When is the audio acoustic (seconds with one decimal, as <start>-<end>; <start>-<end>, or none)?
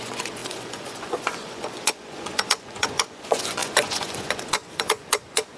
none